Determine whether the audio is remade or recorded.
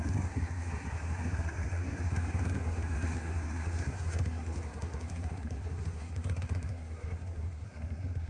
remade